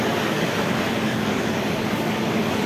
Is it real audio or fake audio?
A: fake